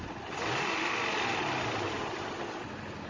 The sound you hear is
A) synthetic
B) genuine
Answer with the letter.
B